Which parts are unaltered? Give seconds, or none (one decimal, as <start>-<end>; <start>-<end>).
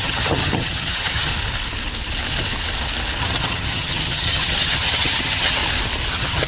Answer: 1.3-3.2; 5.6-6.1